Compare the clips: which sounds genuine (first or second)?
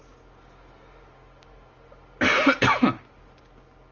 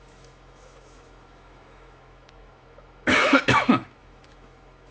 first